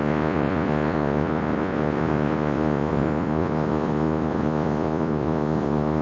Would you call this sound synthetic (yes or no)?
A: yes